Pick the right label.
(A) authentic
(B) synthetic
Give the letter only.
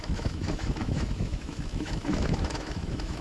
B